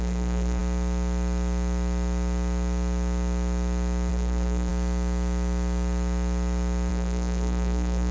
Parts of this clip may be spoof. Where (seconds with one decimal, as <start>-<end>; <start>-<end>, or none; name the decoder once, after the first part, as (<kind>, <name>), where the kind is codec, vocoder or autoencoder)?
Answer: 0.0-0.6 (codec, SNAC); 4.1-4.7; 6.9-8.1